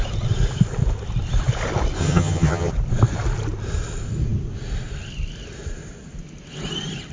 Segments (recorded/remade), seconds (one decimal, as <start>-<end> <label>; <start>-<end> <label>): 0.0-2.0 recorded; 2.0-2.7 remade; 2.7-7.1 recorded